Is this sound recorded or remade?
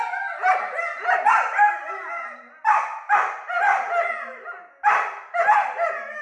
recorded